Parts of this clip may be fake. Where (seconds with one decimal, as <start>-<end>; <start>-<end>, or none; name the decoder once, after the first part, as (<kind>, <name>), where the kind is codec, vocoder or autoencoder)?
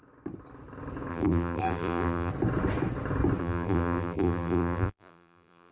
1.1-2.3 (vocoder, BigVGAN v2); 3.4-5.7